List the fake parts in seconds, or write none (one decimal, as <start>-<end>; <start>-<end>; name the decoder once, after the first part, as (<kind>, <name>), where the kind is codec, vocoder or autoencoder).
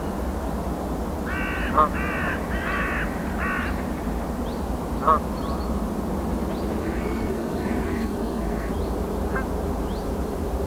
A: 6.8-8.7 (codec, SNAC)